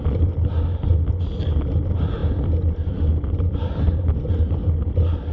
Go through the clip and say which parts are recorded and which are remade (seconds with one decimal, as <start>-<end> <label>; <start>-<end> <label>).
0.0-5.3 recorded